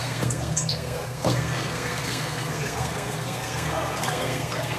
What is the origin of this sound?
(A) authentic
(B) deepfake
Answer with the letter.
B